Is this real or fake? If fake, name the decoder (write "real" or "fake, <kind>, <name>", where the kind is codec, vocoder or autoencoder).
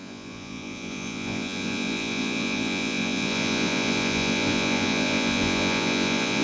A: fake, vocoder, Vocos